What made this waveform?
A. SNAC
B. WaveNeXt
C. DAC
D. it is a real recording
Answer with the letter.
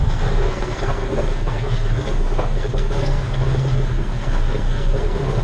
A